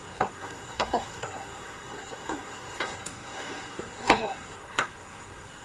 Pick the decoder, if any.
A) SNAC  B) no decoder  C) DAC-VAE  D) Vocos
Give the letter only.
A